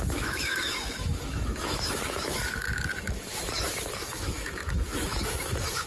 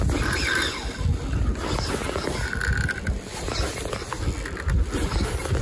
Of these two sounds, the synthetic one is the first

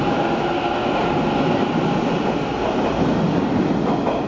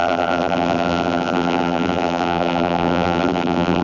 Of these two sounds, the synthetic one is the second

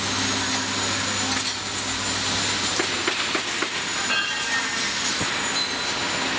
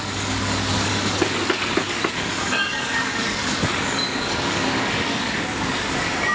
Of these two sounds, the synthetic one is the second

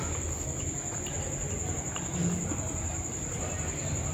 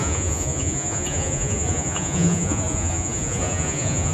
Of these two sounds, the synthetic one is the second